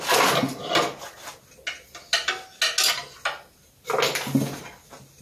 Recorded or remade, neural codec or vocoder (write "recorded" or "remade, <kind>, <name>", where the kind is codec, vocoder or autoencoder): recorded